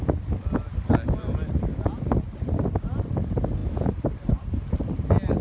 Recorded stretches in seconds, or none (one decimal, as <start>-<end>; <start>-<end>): 0.0-5.4